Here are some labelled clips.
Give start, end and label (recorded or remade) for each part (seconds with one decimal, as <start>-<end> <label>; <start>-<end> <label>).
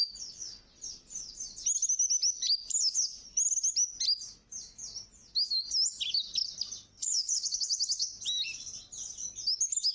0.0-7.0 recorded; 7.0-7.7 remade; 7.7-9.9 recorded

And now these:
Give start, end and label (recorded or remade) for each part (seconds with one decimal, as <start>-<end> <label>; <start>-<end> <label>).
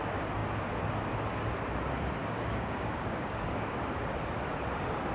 0.0-2.2 recorded; 2.2-3.8 remade; 3.8-5.1 recorded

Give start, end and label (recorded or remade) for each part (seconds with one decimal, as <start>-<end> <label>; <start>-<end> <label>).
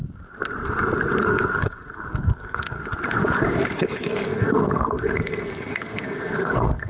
0.0-1.2 recorded; 1.2-2.8 remade; 2.8-3.8 recorded; 3.8-6.9 remade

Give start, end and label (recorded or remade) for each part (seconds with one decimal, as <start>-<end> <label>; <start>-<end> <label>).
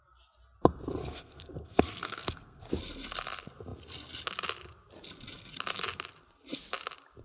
0.0-1.0 recorded; 1.0-2.7 remade; 2.7-7.2 recorded